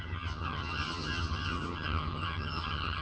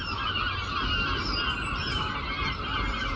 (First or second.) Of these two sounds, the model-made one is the first